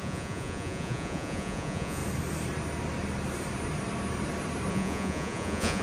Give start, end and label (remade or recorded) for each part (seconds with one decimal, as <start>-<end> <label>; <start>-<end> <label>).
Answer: 0.0-2.0 remade; 2.0-4.7 recorded; 4.7-5.8 remade